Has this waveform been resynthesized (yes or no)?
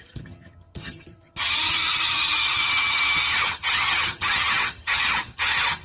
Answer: yes